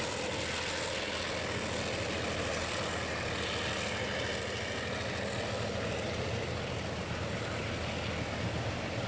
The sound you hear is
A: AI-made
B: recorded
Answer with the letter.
B